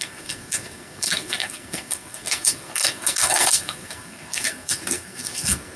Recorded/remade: remade